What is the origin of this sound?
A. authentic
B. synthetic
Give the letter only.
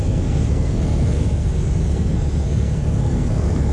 B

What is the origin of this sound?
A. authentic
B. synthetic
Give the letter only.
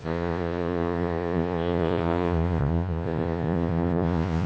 B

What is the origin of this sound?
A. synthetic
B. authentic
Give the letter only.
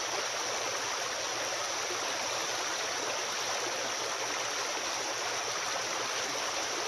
B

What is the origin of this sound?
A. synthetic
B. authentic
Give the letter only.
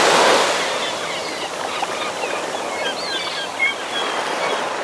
B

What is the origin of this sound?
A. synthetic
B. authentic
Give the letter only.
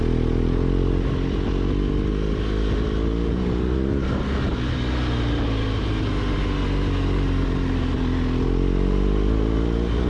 B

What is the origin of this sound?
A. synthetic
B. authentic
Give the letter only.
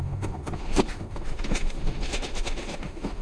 A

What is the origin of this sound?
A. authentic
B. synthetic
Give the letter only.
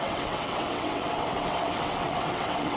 B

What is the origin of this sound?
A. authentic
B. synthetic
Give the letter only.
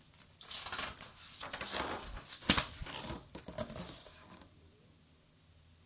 A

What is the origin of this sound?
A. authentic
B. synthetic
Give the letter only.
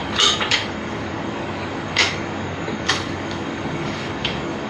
B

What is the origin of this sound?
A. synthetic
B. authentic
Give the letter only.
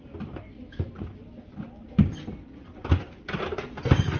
B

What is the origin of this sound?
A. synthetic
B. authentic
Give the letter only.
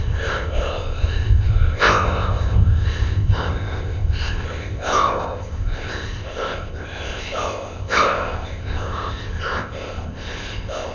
A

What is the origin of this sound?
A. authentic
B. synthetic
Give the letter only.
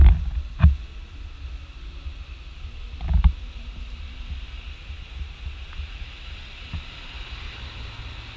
A